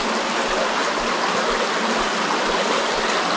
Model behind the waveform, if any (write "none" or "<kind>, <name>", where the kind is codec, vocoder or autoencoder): none